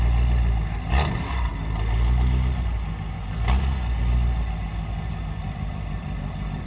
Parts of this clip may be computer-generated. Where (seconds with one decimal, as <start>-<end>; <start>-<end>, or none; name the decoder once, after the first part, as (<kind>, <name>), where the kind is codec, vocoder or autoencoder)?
none